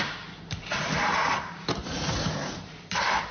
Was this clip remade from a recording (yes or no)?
yes